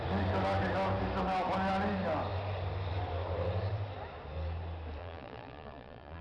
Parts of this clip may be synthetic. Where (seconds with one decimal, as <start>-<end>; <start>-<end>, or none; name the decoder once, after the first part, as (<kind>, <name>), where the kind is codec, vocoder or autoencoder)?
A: 5.0-6.2 (vocoder, Vocos)